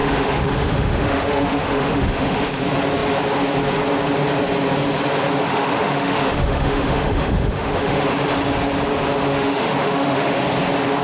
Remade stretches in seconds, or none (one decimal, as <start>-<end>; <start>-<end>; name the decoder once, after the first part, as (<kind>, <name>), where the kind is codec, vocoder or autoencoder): 0.0-2.6 (autoencoder, DAC-VAE); 5.5-8.1; 9.3-10.4